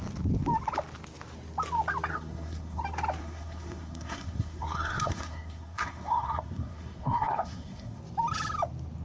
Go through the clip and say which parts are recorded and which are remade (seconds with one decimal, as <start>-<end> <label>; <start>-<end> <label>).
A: 0.0-2.1 recorded; 2.1-2.8 remade; 2.8-3.2 recorded; 3.2-8.0 remade; 8.0-9.0 recorded